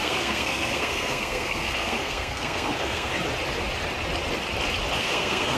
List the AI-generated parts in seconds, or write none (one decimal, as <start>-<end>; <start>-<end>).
0.0-3.1; 5.0-5.6